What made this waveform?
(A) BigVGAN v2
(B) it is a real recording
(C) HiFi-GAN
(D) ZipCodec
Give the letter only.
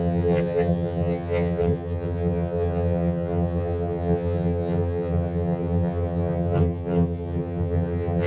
C